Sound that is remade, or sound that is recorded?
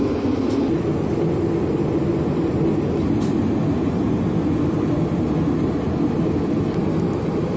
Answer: recorded